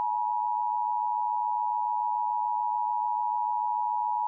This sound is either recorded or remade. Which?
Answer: recorded